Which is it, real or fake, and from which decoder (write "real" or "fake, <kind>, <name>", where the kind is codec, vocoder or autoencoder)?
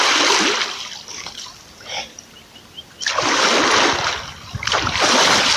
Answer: real